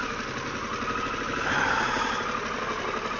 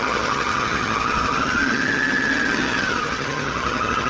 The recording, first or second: first